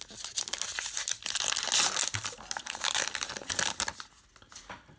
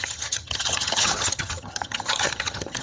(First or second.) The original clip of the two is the first